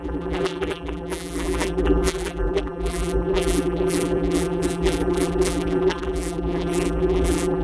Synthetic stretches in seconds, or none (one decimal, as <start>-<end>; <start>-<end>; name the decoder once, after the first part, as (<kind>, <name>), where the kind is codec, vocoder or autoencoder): 0.0-7.6 (vocoder, BigVGAN v2)